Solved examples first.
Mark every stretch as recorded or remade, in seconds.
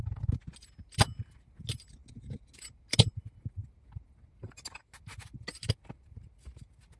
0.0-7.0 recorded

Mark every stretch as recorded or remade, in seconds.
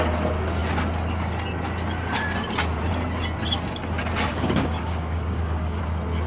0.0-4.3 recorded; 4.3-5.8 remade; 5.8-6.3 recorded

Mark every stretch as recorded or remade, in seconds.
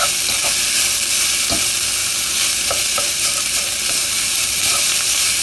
0.0-2.0 recorded; 2.0-5.4 remade